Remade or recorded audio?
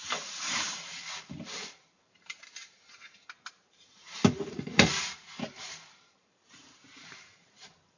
remade